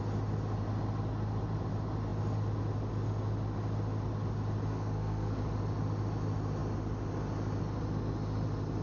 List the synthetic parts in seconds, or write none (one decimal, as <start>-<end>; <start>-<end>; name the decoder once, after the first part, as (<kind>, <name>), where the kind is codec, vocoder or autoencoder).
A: 4.7-5.4 (codec, SNAC)